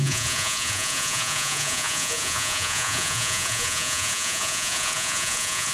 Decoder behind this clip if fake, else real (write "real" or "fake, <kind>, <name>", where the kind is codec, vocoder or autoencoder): fake, vocoder, Vocos